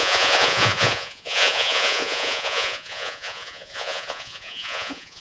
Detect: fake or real fake